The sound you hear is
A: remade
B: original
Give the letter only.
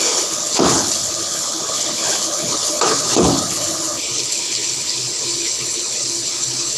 A